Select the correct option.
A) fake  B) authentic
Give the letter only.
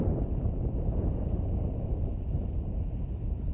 A